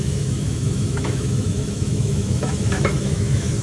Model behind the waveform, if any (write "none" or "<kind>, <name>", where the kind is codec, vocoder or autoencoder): autoencoder, DAC-VAE